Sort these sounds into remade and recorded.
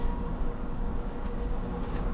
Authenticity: remade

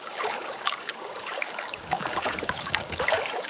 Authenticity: remade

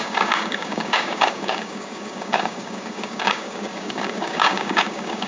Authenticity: remade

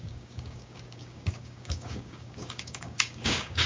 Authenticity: remade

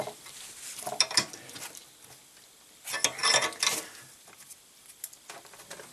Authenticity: recorded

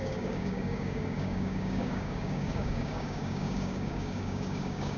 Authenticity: remade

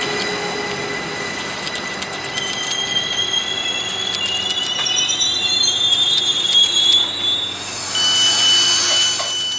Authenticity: recorded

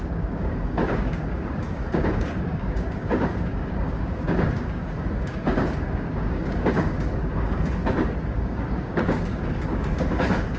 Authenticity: remade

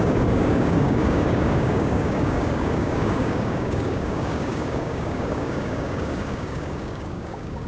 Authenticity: remade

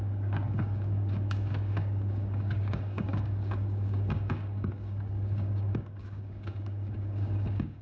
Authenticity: remade